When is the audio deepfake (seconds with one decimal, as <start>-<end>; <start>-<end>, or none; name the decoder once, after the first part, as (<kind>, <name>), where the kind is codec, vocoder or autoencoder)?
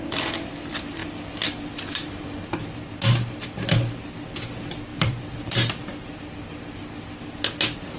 4.9-5.7 (vocoder, BigVGAN v2)